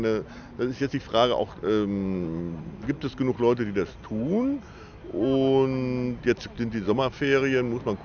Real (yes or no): yes